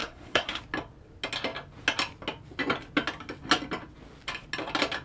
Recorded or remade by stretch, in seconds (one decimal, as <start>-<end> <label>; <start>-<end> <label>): 0.0-0.6 remade; 0.6-5.0 recorded